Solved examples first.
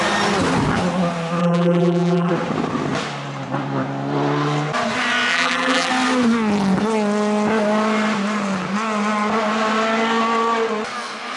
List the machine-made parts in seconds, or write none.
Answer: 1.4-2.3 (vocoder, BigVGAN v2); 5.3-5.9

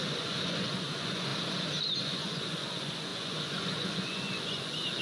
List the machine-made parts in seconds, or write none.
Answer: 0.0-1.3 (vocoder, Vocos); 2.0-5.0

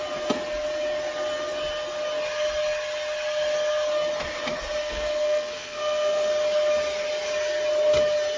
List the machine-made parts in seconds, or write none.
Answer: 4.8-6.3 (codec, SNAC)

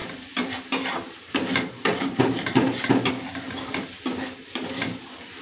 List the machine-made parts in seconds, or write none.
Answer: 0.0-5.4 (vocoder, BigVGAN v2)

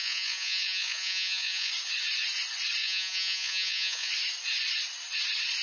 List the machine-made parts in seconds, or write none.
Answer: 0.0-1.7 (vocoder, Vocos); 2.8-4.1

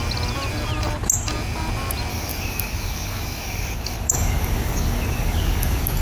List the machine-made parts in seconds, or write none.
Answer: 2.1-6.0 (codec, DAC)